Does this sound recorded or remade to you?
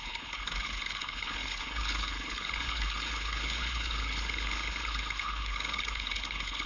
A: remade